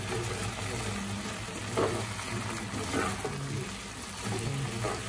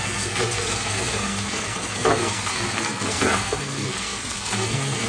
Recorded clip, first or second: first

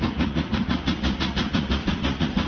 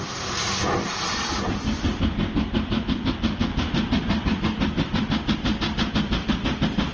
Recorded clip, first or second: second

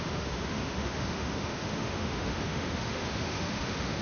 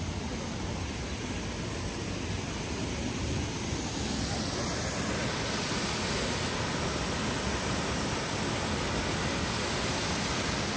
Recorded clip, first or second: second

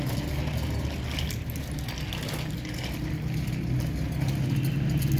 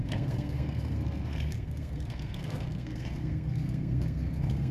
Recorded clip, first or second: first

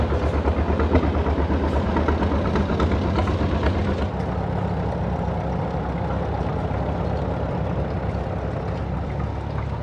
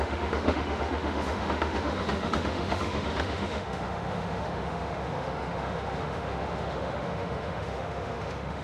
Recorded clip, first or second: first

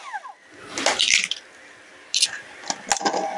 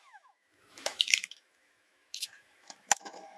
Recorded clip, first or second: first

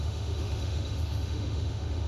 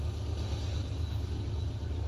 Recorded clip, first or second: second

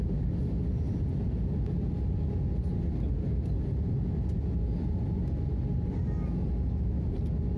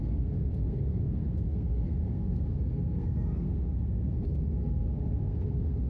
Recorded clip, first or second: first